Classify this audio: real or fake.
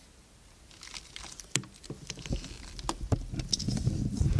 real